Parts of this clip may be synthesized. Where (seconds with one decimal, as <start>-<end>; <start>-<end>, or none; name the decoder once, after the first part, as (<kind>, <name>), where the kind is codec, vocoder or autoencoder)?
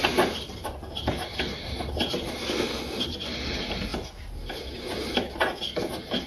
none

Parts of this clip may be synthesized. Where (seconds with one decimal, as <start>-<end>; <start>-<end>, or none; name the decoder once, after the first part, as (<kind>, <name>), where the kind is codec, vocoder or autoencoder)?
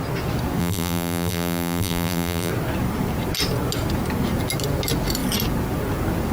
0.6-2.5 (vocoder, BigVGAN v2)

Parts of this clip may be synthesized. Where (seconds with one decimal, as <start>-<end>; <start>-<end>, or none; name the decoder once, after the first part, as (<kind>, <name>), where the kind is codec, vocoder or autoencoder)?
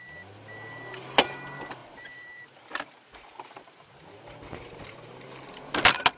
1.8-5.5 (vocoder, BigVGAN v2)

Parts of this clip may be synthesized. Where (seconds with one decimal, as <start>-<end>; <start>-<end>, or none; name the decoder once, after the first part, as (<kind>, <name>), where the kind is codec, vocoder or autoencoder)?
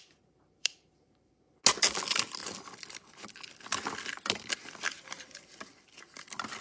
0.6-1.3 (vocoder, BigVGAN v2)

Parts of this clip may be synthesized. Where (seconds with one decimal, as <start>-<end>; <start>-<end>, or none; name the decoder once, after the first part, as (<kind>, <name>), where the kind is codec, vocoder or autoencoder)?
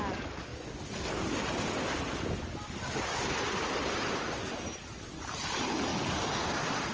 none